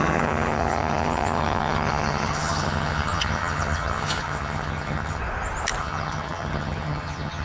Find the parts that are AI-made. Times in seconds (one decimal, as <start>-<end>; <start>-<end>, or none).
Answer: 0.0-5.2; 5.8-7.4